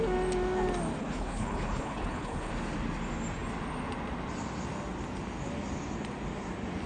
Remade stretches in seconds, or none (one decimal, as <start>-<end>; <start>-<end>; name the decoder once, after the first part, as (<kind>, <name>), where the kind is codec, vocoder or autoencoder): 1.0-2.5 (codec, HILCodec)

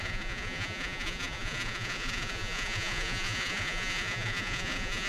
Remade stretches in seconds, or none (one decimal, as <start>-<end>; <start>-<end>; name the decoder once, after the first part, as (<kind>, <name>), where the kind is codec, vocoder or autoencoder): 0.0-5.1 (vocoder, Vocos)